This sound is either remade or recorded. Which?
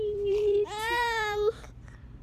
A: remade